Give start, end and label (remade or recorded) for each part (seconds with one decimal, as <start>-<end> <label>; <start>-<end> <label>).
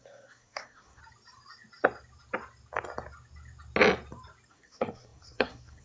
0.0-1.0 remade; 1.0-4.5 recorded; 4.5-5.8 remade